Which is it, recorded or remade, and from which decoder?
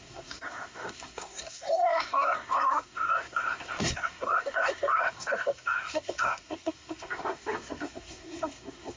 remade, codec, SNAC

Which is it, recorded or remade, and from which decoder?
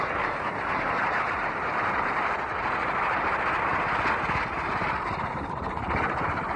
recorded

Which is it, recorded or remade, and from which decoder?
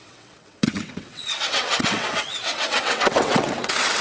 remade, vocoder, WaveNeXt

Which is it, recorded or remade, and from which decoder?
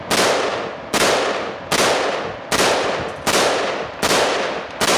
recorded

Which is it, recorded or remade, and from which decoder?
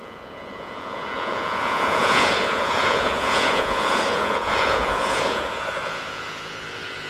remade, vocoder, Vocos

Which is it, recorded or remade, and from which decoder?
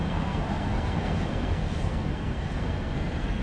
remade, codec, SNAC